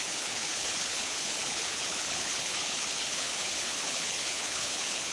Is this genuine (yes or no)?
no